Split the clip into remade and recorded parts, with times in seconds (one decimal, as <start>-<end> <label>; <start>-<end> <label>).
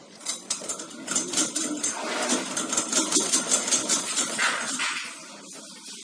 0.0-0.7 remade; 0.7-3.9 recorded; 3.9-5.2 remade; 5.2-6.0 recorded